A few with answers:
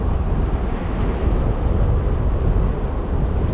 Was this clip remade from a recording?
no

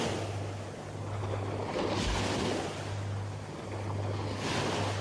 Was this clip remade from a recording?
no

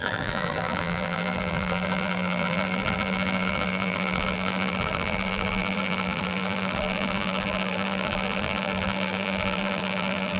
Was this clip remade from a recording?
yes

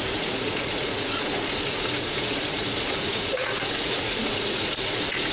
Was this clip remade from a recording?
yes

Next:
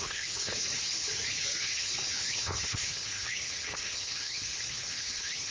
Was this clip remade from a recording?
yes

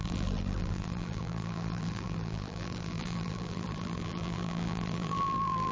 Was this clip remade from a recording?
yes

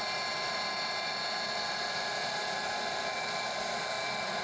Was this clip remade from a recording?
no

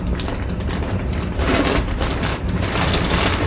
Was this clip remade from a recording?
no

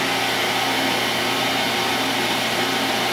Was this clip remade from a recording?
no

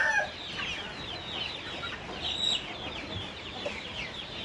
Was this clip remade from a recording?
yes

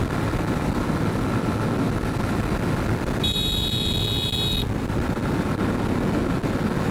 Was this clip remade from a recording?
no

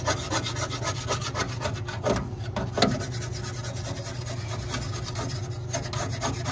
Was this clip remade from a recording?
no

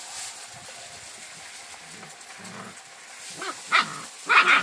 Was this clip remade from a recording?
no